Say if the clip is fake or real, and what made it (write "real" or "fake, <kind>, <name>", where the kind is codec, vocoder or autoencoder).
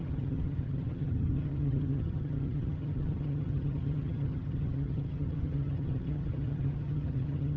fake, vocoder, HiFi-GAN